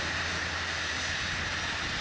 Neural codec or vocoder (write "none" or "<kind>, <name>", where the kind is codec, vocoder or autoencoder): none